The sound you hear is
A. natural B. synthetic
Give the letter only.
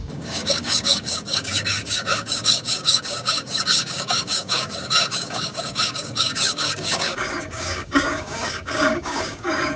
B